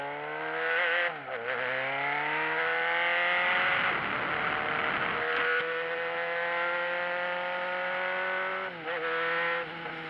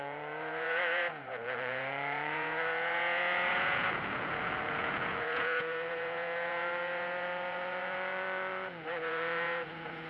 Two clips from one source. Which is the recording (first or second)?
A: first